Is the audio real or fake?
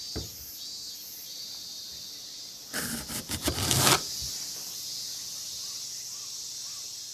real